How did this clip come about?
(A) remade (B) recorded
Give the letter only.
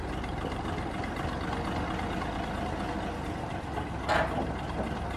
B